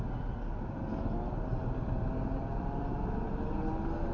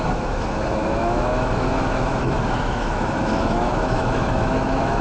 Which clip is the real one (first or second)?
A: first